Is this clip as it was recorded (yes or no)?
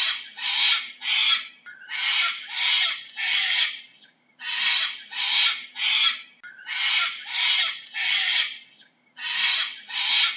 yes